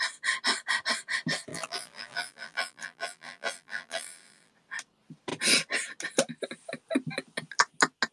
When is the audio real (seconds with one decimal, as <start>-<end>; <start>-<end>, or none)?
0.0-1.5; 4.5-8.1

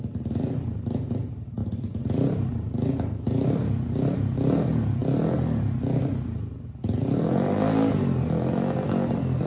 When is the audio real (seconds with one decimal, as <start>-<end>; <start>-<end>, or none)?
0.0-9.5

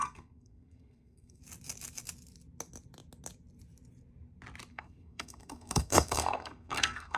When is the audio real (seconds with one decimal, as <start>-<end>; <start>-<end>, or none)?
1.4-4.7